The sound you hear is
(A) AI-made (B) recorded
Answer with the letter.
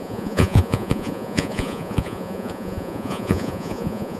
A